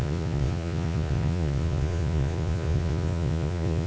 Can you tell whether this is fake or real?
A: fake